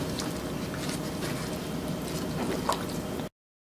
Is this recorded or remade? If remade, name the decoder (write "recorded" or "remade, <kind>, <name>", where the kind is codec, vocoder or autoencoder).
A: recorded